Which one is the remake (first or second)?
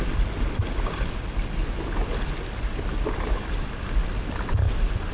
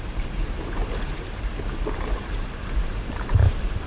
second